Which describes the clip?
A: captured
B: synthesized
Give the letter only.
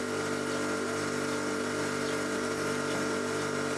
A